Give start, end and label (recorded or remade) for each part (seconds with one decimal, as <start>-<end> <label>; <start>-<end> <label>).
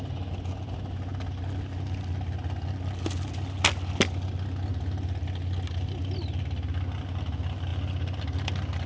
0.0-8.9 recorded